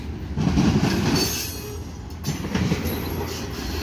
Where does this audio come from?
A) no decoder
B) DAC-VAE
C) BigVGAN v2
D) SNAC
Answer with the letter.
A